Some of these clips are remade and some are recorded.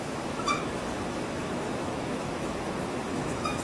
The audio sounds remade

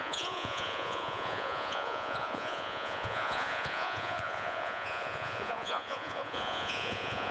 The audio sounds remade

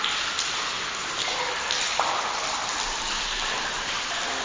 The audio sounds recorded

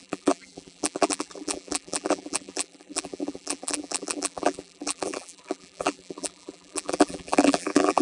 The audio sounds remade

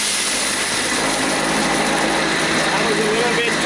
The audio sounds recorded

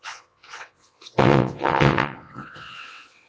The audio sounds remade